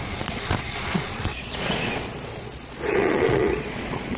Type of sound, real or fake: fake